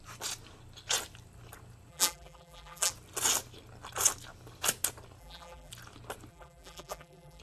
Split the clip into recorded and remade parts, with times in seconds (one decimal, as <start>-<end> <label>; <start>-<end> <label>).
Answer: 0.0-1.9 recorded; 1.9-2.9 remade; 2.9-5.2 recorded; 5.2-5.7 remade; 5.7-6.3 recorded; 6.3-7.4 remade

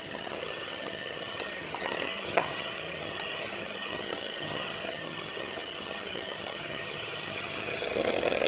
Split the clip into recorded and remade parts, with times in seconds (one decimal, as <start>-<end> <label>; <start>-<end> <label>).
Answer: 0.0-8.5 remade